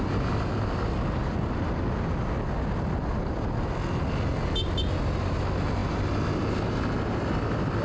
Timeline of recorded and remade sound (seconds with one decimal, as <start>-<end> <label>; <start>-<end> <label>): 0.0-7.8 recorded